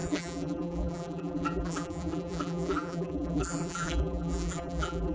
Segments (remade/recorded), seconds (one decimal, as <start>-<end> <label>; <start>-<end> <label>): 0.0-5.1 remade